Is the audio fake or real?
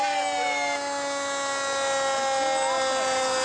real